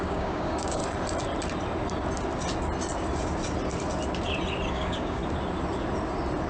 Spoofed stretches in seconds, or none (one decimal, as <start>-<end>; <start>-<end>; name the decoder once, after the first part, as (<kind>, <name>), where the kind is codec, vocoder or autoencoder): 0.0-0.8 (codec, DAC); 4.7-5.2